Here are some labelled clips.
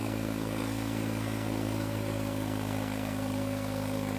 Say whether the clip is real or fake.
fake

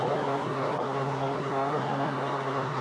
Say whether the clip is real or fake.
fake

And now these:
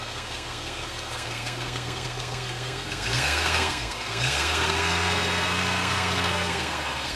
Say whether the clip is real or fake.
fake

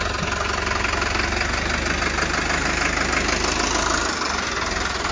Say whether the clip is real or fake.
real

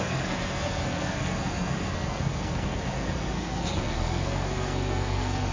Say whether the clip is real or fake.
fake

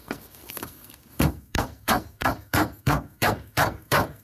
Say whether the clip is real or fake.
fake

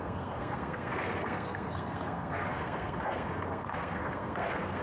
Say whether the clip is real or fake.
fake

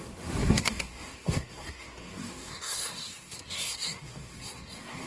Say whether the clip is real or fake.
fake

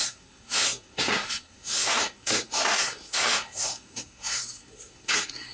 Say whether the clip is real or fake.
fake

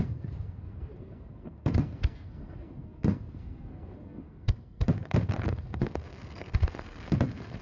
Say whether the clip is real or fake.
fake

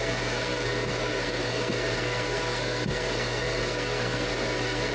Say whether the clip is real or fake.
fake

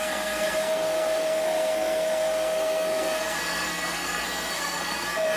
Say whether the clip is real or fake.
fake